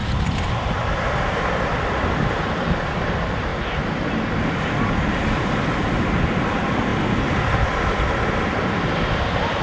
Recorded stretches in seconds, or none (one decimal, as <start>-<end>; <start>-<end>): 3.5-4.6